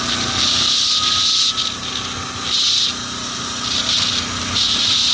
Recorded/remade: recorded